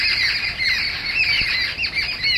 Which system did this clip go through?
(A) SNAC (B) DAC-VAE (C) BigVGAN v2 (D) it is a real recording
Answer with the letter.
D